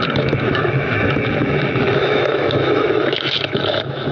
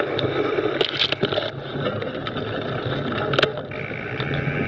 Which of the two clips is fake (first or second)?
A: first